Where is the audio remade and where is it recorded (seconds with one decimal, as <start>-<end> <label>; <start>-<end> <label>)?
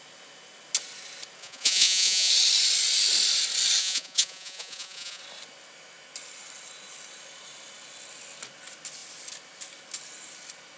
0.0-1.4 recorded; 1.4-2.3 remade; 2.3-3.8 recorded; 3.8-5.2 remade; 5.2-10.8 recorded